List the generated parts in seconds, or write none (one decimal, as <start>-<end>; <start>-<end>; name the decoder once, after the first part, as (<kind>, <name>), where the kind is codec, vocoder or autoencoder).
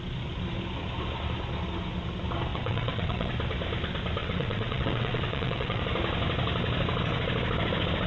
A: 2.5-3.3 (vocoder, WaveNeXt); 4.2-5.8